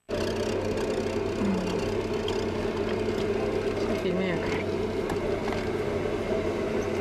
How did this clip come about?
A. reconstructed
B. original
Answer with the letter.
B